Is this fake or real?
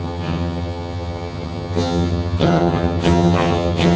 fake